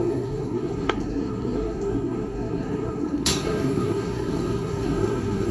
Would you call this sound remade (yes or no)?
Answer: yes